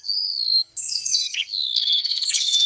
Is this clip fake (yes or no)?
yes